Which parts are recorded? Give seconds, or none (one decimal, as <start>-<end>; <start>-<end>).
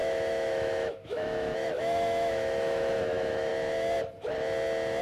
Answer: 3.5-5.0